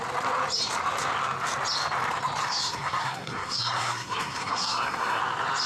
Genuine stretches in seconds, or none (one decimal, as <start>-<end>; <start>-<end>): 0.0-2.4; 5.2-5.7